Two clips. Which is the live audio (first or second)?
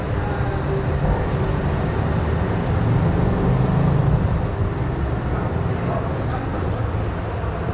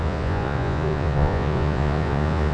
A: first